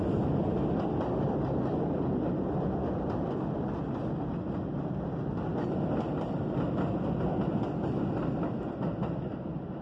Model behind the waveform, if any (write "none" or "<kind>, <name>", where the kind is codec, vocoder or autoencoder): none